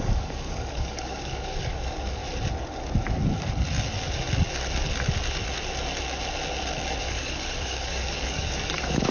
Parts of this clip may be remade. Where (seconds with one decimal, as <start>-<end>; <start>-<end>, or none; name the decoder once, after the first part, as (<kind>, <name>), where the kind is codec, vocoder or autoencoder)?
0.0-2.2 (codec, DAC); 7.0-9.1